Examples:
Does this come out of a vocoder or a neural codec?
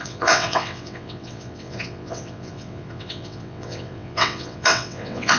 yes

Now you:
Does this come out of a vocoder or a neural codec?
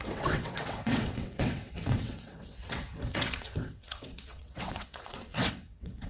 yes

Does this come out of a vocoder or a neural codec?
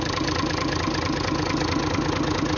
no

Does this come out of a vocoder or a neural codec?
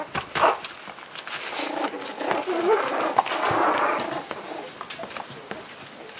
no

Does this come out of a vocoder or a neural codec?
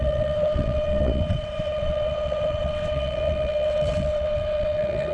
yes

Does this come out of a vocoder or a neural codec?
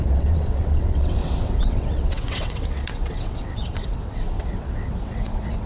yes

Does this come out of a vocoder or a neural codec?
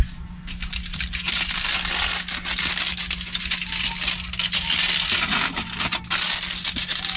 no